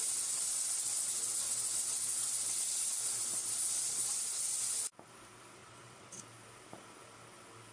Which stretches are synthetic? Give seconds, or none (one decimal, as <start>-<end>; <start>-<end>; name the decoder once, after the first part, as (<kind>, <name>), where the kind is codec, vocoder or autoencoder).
3.4-4.4 (vocoder, Vocos); 5.6-6.2